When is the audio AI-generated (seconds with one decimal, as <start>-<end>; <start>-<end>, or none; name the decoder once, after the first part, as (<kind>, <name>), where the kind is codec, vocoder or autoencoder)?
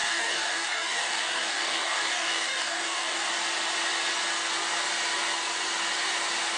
0.0-3.3 (codec, DAC)